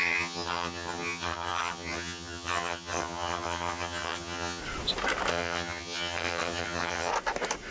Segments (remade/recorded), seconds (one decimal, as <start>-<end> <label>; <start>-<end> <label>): 0.0-4.6 remade; 4.6-5.3 recorded; 5.3-7.1 remade; 7.1-7.7 recorded